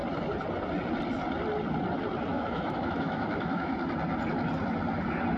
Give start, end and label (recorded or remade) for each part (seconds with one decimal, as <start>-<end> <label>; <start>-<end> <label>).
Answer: 0.0-2.3 recorded; 2.3-3.7 remade; 3.7-5.4 recorded